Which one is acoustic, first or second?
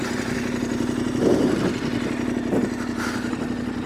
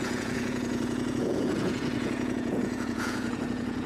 first